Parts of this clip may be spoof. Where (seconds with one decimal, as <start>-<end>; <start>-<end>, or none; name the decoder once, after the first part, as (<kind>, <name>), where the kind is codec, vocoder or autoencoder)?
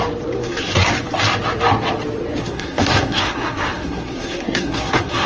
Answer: 0.4-0.9 (codec, SNAC); 2.4-5.3